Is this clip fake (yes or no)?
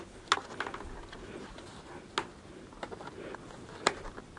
no